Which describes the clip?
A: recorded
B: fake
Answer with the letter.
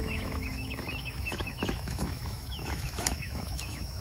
B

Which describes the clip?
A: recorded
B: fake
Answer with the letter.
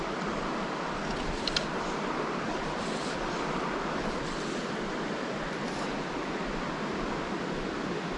A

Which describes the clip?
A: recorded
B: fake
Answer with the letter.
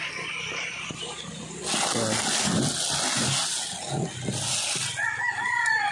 A